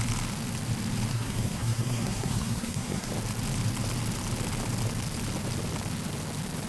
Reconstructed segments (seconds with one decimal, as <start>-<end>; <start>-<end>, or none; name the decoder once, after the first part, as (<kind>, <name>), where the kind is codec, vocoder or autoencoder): 1.1-3.1 (codec, SNAC)